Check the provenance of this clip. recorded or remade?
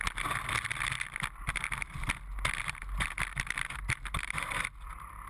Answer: recorded